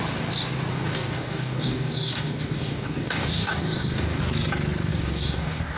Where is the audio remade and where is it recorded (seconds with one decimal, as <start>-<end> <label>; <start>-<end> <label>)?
0.0-0.7 recorded; 0.7-4.2 remade; 4.2-4.9 recorded; 4.9-5.8 remade